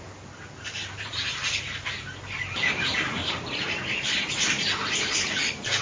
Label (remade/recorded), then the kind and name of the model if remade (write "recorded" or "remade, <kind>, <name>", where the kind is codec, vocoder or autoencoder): remade, vocoder, BigVGAN v2